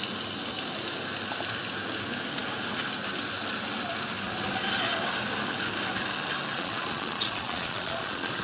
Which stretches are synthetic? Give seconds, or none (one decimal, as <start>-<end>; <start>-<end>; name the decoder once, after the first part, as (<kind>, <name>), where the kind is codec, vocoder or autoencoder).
6.5-8.4 (vocoder, Vocos)